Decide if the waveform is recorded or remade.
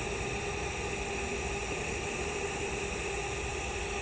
recorded